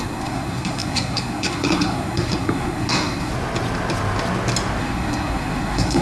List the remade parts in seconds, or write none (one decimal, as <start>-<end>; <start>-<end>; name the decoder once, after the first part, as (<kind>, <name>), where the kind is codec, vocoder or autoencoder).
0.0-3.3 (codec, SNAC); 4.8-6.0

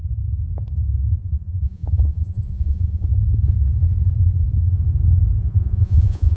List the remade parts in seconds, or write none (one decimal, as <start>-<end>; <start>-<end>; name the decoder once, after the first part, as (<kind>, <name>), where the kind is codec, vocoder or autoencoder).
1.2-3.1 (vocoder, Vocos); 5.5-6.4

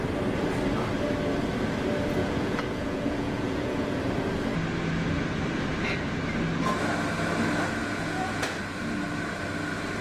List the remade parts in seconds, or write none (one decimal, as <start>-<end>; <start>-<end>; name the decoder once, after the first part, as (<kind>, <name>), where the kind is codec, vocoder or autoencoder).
2.2-3.9 (vocoder, Vocos); 7.8-8.6